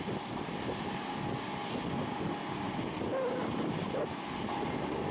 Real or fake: real